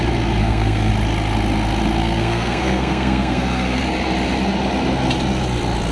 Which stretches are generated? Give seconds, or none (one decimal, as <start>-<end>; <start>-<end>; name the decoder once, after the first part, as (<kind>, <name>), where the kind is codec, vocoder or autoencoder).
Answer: 0.4-0.9 (codec, SNAC); 2.0-3.8

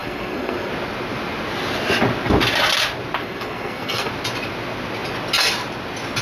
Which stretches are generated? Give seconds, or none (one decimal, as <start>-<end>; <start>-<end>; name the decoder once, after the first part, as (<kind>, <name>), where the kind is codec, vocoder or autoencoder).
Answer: 0.0-0.7 (codec, SNAC); 3.2-4.1